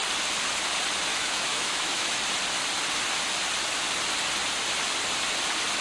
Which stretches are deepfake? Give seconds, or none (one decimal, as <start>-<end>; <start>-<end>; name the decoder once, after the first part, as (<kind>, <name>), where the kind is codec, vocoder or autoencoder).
1.1-2.2 (autoencoder, DAC-VAE)